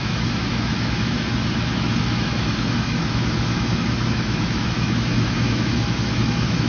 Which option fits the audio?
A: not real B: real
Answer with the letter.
A